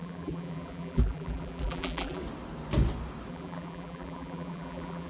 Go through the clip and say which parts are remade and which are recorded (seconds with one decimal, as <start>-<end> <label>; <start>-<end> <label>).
0.0-2.2 remade; 2.2-3.3 recorded; 3.3-5.1 remade